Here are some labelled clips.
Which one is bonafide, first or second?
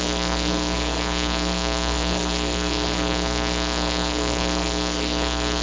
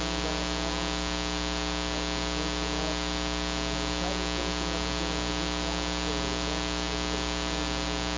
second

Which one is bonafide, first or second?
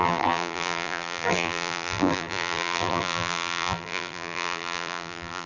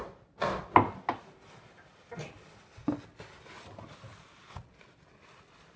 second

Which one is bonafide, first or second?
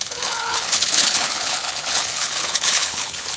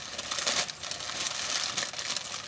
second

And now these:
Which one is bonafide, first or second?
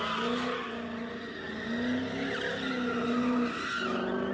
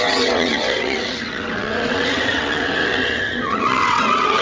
first